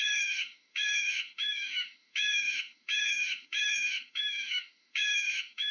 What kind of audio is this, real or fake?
fake